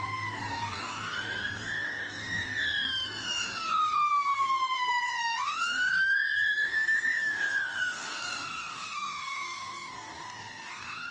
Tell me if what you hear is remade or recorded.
remade